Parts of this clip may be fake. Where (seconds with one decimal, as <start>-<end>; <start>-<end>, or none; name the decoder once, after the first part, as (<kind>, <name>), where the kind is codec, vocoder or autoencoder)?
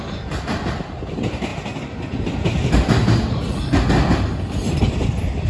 none